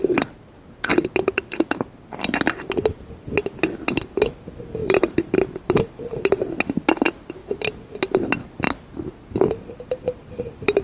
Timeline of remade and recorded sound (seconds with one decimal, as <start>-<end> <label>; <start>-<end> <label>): 0.0-4.8 recorded; 4.8-6.2 remade; 6.2-7.4 recorded; 7.4-8.0 remade; 8.0-10.8 recorded